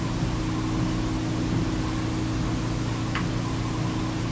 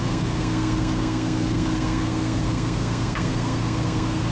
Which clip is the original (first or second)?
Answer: first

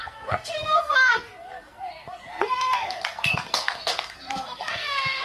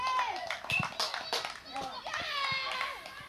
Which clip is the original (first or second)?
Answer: second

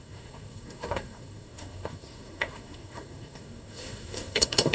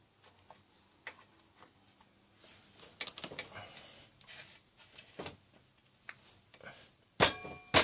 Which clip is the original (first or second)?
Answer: second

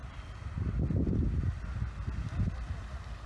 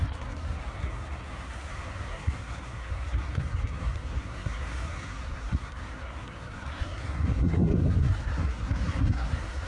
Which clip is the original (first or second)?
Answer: first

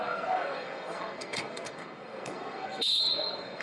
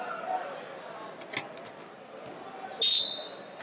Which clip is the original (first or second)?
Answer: second